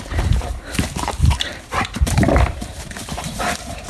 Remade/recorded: remade